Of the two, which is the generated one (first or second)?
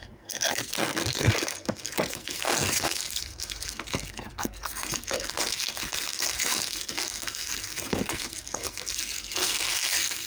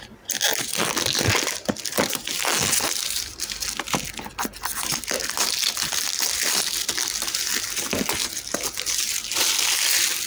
first